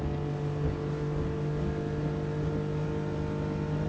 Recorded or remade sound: recorded